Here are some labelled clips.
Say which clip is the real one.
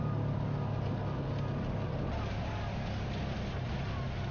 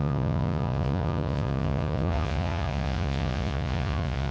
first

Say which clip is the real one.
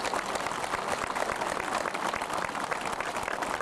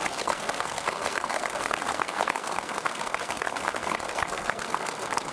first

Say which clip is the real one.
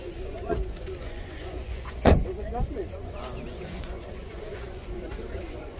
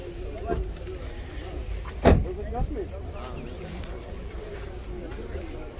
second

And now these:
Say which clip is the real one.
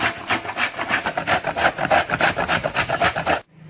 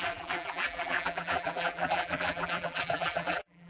first